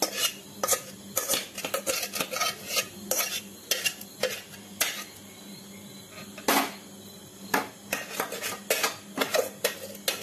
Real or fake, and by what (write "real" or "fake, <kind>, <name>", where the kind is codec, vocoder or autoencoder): real